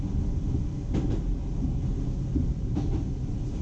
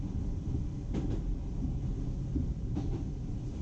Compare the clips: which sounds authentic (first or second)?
first